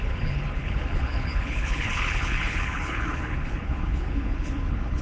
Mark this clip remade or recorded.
remade